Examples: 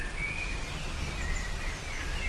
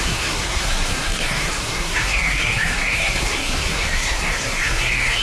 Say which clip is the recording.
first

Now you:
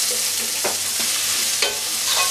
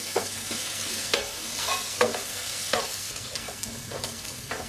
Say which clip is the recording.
first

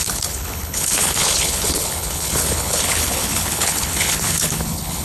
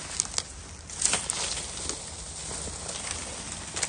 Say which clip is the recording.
second